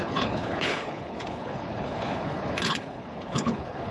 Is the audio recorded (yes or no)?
no